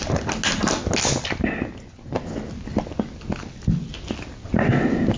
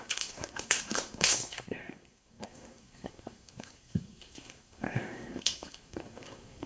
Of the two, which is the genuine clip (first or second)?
first